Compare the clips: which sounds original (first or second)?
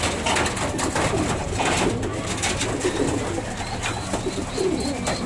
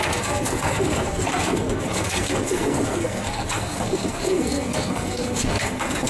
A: first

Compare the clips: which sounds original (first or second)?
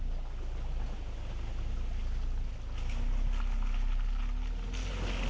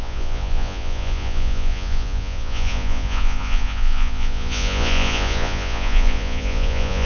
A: first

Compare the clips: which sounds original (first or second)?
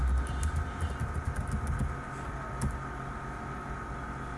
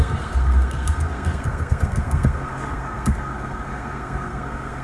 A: first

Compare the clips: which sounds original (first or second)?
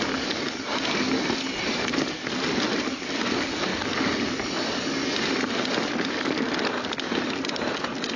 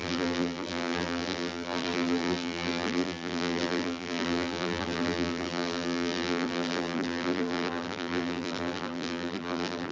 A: first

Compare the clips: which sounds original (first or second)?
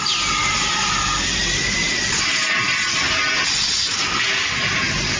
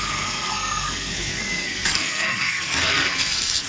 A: first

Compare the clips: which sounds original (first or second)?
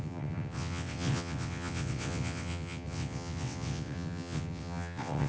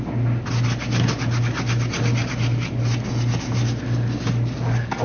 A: second